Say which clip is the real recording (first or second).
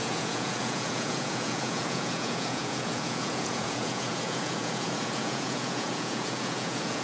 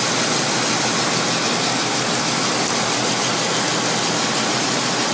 second